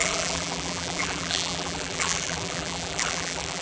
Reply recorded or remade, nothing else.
remade